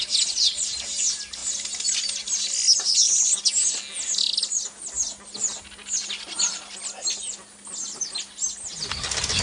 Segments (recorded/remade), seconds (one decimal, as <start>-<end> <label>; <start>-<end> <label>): 0.0-9.4 recorded